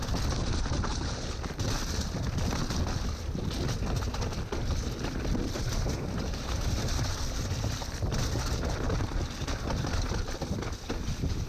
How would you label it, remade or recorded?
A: recorded